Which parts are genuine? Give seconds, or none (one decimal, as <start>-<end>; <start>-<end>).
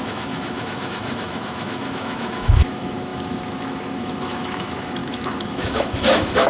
none